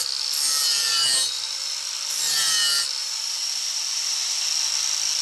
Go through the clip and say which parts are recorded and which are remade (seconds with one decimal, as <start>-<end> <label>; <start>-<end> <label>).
0.0-3.0 recorded; 3.0-4.4 remade; 4.4-5.2 recorded

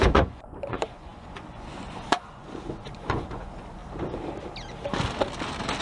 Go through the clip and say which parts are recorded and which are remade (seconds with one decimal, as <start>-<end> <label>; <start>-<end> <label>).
0.0-3.8 remade; 3.8-5.8 recorded

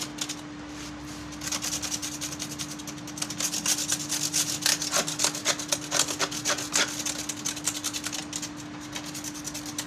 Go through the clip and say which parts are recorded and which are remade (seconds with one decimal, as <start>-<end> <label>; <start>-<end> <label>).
0.0-9.9 recorded